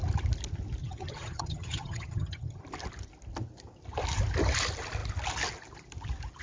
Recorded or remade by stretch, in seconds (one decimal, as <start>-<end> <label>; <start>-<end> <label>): 0.0-0.8 recorded; 0.8-2.6 remade; 2.6-6.4 recorded